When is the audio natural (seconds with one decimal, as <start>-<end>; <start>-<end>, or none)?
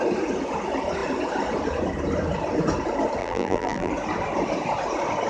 0.0-3.2; 3.9-5.3